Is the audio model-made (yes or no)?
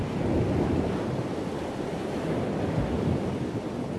no